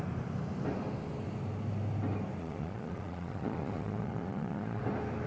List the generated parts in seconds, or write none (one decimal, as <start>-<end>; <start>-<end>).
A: 2.4-4.8

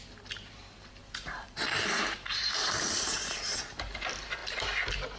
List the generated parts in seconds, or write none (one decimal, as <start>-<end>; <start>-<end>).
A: 1.0-3.6

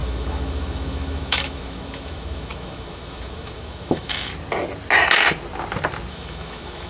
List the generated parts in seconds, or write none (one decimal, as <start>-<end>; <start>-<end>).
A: 0.0-4.3; 6.1-6.9

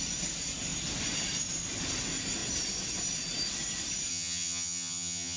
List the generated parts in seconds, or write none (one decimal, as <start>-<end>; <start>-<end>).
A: 4.1-5.4

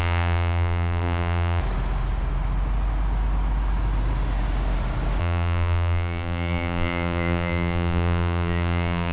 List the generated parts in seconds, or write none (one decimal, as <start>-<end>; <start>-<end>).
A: 0.0-1.6; 5.2-9.1

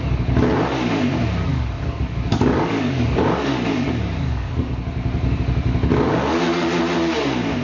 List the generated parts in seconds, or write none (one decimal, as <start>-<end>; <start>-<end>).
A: 1.5-4.7; 5.9-6.8